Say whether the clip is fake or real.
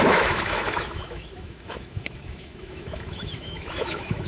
fake